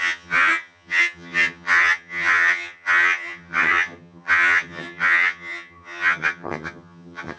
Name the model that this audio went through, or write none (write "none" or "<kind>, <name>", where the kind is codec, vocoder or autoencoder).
vocoder, HiFi-GAN